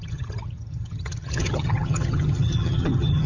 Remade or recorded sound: remade